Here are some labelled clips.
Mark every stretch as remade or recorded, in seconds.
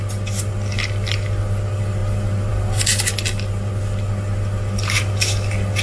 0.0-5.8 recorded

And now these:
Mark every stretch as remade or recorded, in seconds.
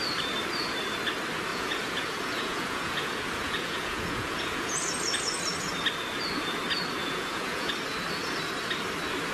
0.0-1.5 recorded; 1.5-4.9 remade; 4.9-7.0 recorded; 7.0-7.7 remade; 7.7-9.3 recorded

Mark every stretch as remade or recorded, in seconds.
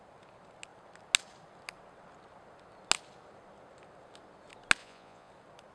0.0-4.8 recorded; 4.8-5.3 remade; 5.3-5.7 recorded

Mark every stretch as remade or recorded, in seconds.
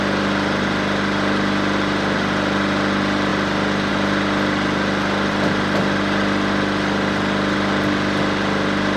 0.0-9.0 recorded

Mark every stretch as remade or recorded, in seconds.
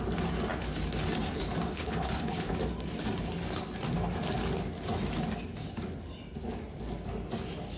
0.0-1.8 recorded; 1.8-2.5 remade; 2.5-7.8 recorded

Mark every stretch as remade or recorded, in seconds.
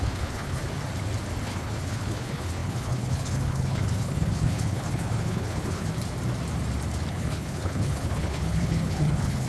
0.0-0.6 remade; 0.6-1.4 recorded; 1.4-5.9 remade; 5.9-7.1 recorded; 7.1-9.5 remade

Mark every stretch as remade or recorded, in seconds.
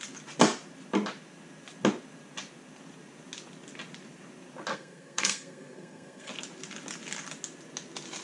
0.0-4.7 recorded; 4.7-6.3 remade; 6.3-8.2 recorded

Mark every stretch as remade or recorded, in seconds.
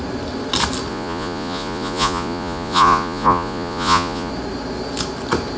0.0-0.9 recorded; 0.9-4.3 remade; 4.3-5.6 recorded